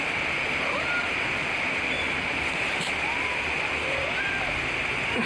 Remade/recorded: recorded